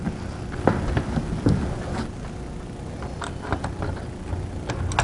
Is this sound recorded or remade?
recorded